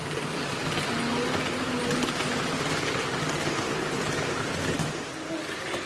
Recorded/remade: recorded